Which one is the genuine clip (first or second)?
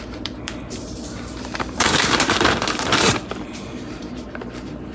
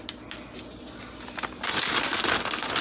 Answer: second